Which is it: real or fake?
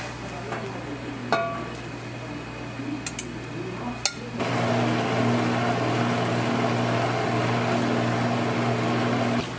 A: real